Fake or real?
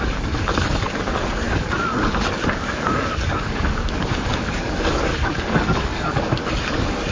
fake